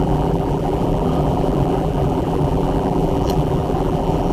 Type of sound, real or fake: fake